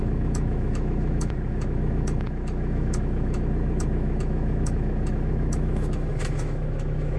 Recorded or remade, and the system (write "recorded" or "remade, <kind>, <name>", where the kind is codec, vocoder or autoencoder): remade, autoencoder, DAC-VAE